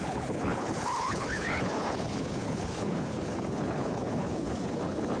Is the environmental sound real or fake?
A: fake